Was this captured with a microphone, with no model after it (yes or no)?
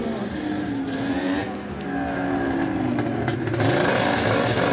yes